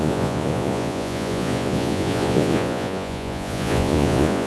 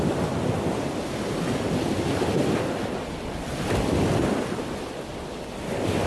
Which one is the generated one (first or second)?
first